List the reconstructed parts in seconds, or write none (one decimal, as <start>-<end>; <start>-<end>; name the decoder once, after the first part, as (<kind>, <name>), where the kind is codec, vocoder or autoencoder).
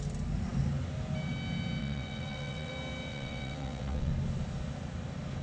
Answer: 1.8-2.7 (vocoder, WaveNeXt); 3.1-4.1